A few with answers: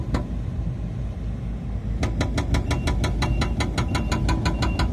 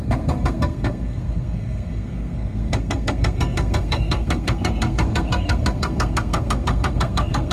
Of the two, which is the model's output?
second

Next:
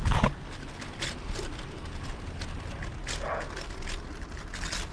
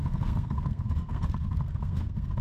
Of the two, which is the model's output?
second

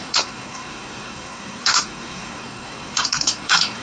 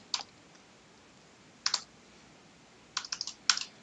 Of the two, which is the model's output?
first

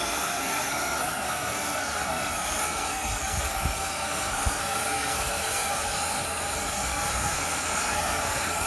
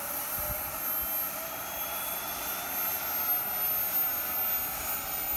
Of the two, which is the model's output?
first